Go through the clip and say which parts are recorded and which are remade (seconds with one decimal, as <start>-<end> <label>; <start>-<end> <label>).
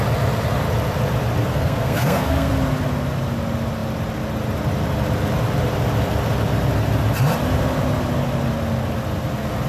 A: 0.0-1.5 recorded; 1.5-2.5 remade; 2.5-9.7 recorded